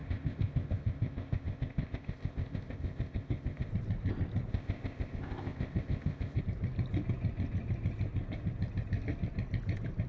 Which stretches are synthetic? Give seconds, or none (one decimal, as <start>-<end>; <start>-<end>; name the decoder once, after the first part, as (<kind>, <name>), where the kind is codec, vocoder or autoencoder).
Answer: 0.0-3.7 (codec, ZipCodec); 4.5-6.4